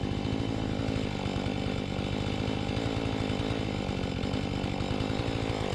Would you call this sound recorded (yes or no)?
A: yes